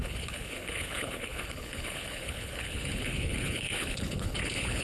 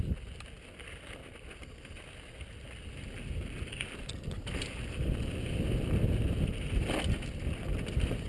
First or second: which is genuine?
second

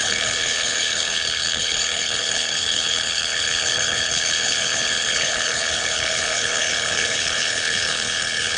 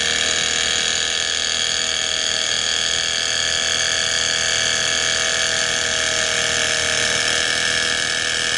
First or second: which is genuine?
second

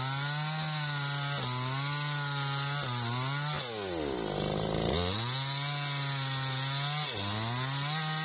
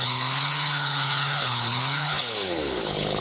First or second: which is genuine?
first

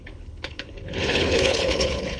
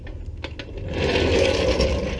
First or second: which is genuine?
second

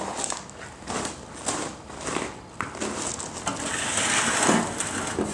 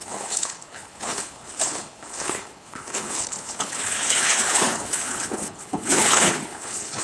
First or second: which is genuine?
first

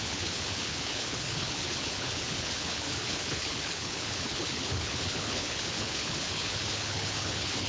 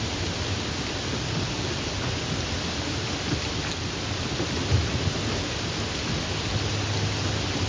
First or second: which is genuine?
second